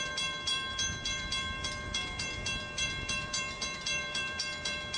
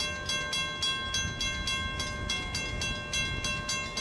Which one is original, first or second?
second